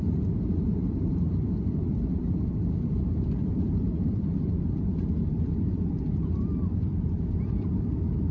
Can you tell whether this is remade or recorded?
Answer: remade